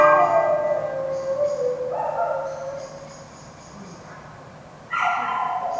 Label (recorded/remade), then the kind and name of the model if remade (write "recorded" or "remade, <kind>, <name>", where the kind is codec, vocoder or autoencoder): recorded